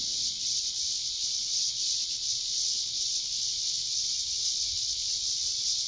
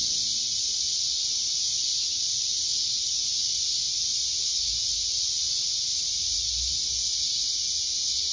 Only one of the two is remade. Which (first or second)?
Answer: first